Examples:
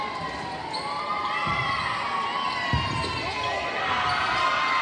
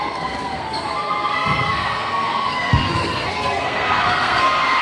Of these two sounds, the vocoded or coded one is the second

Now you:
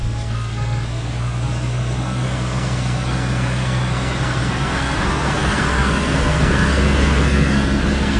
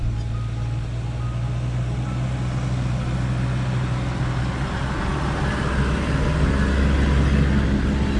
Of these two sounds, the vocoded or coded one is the first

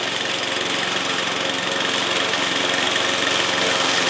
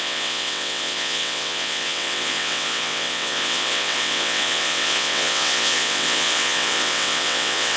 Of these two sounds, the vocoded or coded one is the second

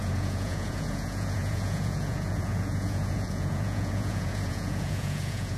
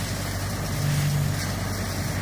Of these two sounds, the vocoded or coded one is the first